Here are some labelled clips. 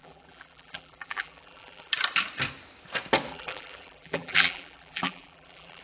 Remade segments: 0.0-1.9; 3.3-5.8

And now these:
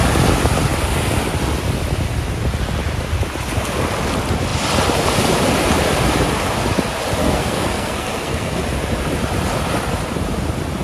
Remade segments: 7.2-8.6